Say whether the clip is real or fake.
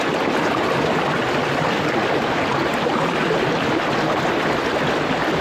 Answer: real